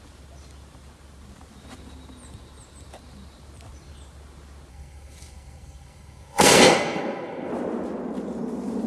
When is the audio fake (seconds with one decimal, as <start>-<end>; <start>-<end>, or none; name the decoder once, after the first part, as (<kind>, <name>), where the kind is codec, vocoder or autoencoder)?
4.7-7.5 (codec, SNAC)